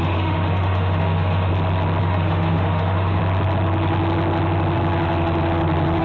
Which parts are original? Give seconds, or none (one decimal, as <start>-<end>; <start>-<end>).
1.5-2.0; 3.2-6.0